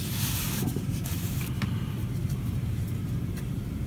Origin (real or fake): fake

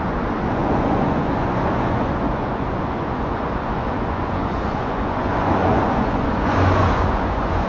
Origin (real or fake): fake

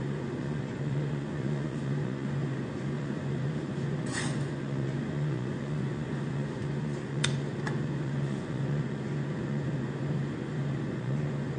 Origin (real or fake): fake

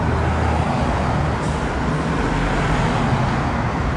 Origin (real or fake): real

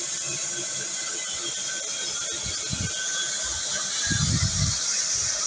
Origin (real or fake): real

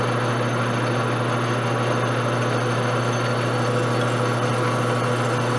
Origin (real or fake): real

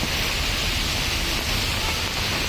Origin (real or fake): real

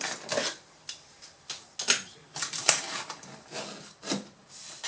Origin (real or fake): real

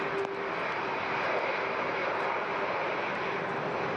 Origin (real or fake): real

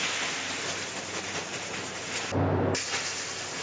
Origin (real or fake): real